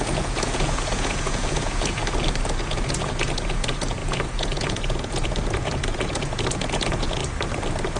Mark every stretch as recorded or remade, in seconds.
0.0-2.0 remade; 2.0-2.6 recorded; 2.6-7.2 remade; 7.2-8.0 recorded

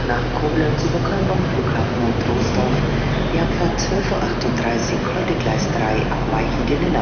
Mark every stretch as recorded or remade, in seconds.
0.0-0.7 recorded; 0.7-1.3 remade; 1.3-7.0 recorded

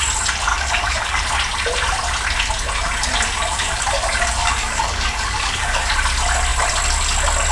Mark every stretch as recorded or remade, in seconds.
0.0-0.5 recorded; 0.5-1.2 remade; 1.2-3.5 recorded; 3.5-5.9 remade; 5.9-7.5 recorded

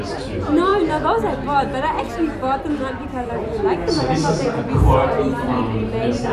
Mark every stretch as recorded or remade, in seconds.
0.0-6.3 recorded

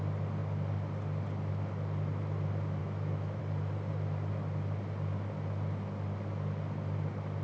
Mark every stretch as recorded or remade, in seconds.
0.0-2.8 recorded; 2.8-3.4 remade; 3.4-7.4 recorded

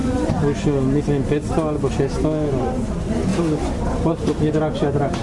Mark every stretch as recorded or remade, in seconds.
0.0-1.0 remade; 1.0-3.3 recorded; 3.3-4.5 remade; 4.5-5.2 recorded

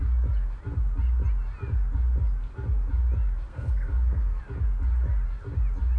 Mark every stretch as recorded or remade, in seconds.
0.0-3.5 recorded; 3.5-4.4 remade; 4.4-6.0 recorded